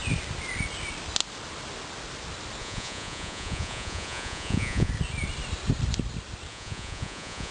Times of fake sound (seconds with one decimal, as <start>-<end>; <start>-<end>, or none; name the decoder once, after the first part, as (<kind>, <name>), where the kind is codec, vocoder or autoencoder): 2.6-4.9 (vocoder, Vocos); 6.5-7.5